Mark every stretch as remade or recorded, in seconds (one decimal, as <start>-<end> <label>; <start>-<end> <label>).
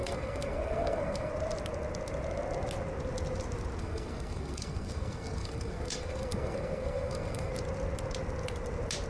0.0-1.3 remade; 1.3-3.8 recorded; 3.8-7.5 remade; 7.5-9.1 recorded